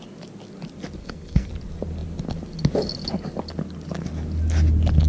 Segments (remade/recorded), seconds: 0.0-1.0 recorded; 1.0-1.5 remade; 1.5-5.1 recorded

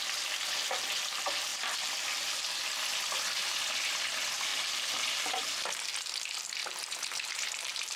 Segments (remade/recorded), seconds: 0.0-1.5 recorded; 1.5-2.4 remade; 2.4-4.5 recorded; 4.5-5.4 remade; 5.4-6.6 recorded; 6.6-8.0 remade

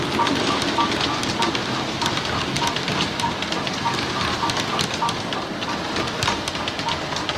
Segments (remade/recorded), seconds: 0.0-7.4 recorded

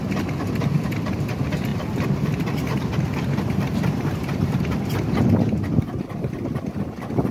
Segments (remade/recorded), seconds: 0.0-1.7 recorded; 1.7-4.6 remade; 4.6-7.3 recorded

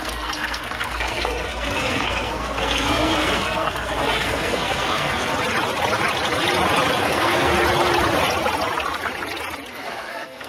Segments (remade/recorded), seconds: 0.0-5.3 remade; 5.3-7.0 recorded; 7.0-7.5 remade; 7.5-9.7 recorded; 9.7-10.5 remade